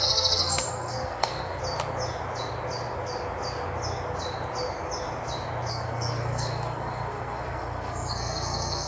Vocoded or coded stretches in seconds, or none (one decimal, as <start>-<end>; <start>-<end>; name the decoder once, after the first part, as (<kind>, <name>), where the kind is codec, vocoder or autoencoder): 0.0-1.6 (codec, SNAC); 5.7-8.9